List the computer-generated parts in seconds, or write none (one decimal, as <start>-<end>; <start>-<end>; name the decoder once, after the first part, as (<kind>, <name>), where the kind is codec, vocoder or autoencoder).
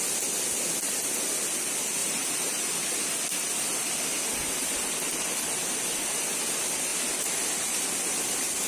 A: 2.0-2.8 (vocoder, BigVGAN v2)